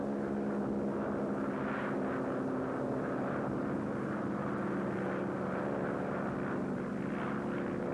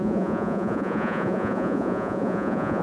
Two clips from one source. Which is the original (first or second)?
first